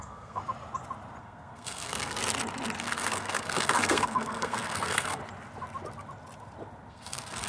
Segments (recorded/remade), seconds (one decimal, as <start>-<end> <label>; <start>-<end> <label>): 0.0-0.4 remade; 0.4-1.2 recorded; 1.2-2.2 remade; 2.2-2.8 recorded; 2.8-5.2 remade; 5.2-6.9 recorded; 6.9-7.5 remade